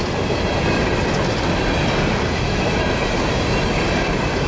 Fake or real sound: real